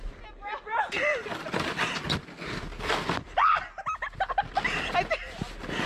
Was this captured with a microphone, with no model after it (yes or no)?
yes